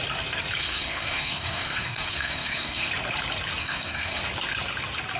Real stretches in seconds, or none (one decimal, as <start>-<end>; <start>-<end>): 0.0-0.6; 2.9-3.6; 4.2-5.2

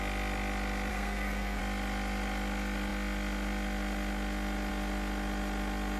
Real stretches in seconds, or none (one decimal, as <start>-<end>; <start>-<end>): 0.0-0.9; 1.6-6.0